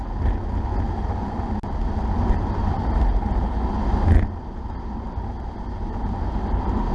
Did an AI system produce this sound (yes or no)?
no